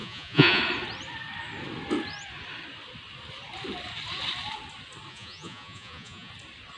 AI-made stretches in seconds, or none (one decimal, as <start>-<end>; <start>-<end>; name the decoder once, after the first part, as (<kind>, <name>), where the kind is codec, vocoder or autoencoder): 0.0-0.6 (vocoder, Vocos); 5.1-6.3